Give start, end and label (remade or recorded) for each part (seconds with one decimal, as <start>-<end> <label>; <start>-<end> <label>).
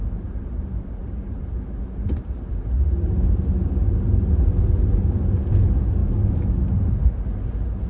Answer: 0.0-1.0 recorded; 1.0-1.6 remade; 1.6-7.9 recorded